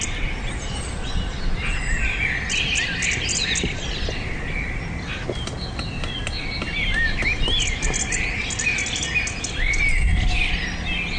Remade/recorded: recorded